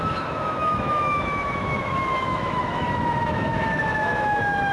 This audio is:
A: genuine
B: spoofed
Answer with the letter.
B